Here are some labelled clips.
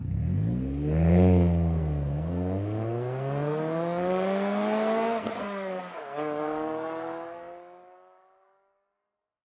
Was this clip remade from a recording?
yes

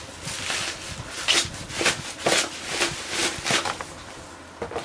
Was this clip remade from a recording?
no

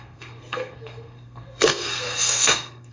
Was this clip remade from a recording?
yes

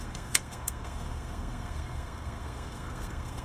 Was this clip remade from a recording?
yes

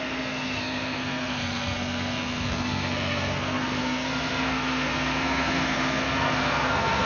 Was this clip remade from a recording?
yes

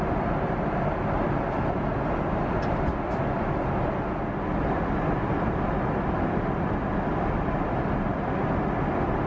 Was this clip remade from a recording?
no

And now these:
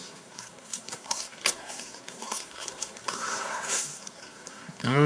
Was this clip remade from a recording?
yes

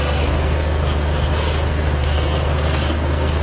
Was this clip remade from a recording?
yes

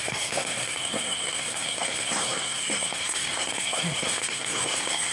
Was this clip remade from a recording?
yes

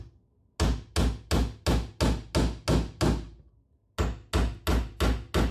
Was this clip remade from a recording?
no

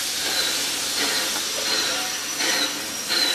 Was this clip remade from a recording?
no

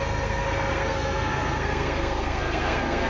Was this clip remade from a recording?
yes